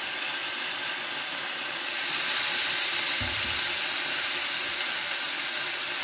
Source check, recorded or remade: recorded